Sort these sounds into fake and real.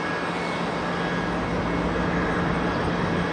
real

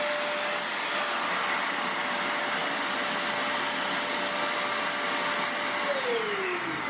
real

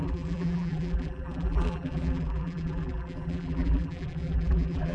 fake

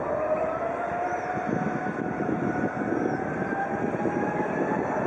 real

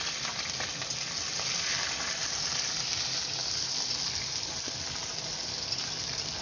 real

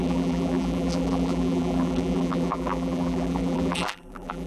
fake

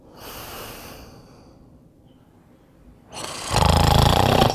fake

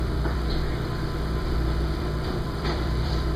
fake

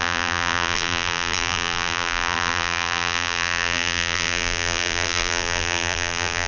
fake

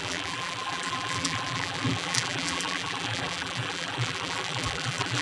fake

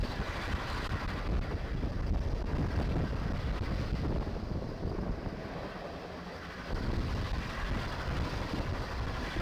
real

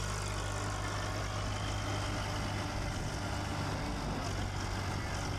real